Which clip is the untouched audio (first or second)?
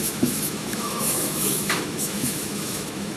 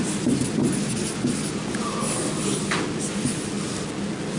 second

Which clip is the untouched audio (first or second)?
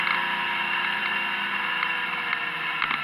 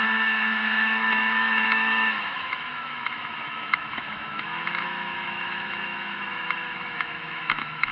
first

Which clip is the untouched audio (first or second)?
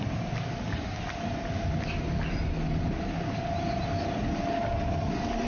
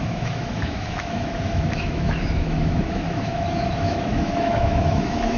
first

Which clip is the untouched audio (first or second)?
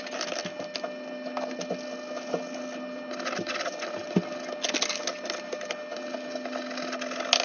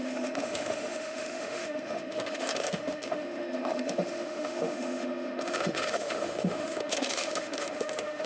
first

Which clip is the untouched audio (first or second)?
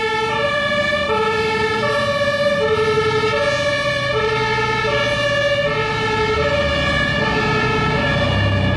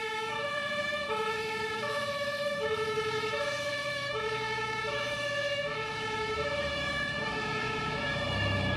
first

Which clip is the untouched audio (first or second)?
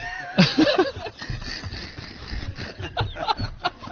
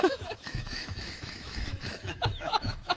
first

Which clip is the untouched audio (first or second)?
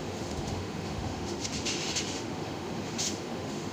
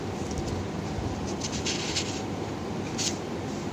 second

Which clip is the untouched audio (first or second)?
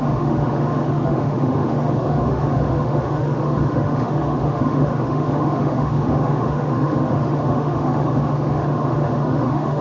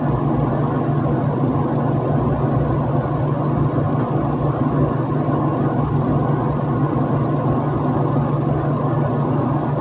second